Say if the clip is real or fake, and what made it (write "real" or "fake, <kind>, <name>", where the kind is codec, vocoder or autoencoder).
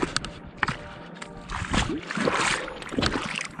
real